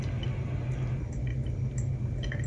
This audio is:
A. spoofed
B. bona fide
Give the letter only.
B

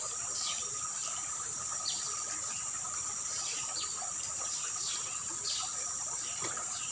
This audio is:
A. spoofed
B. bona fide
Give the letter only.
A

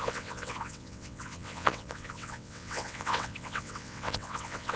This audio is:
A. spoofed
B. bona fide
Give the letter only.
A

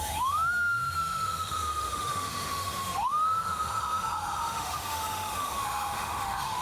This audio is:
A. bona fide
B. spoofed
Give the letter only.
B